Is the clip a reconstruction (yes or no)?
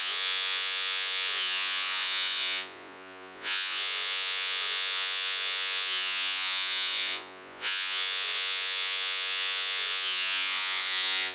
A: yes